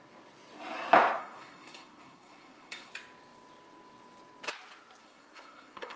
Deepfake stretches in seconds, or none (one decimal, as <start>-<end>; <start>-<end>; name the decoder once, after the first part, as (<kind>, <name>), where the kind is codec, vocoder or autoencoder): 1.2-2.9 (codec, SNAC); 5.0-6.0